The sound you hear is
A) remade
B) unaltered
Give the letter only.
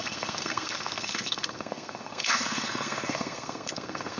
A